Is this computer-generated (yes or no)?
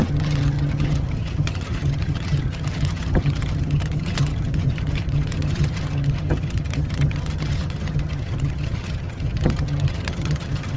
yes